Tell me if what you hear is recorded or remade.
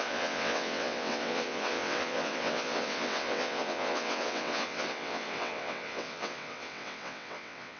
remade